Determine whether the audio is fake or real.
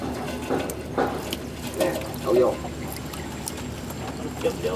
real